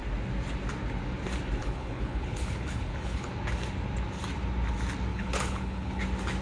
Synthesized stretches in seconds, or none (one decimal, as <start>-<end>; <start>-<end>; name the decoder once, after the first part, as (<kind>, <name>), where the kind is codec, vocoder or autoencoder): 1.6-3.3 (codec, HILCodec); 5.1-6.0